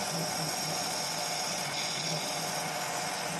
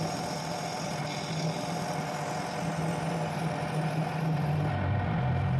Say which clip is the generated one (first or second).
first